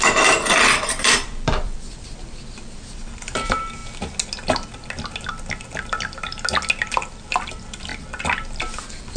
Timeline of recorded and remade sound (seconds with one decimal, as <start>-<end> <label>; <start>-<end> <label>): 0.0-3.8 remade; 3.8-6.8 recorded; 6.8-7.9 remade; 7.9-8.6 recorded; 8.6-9.2 remade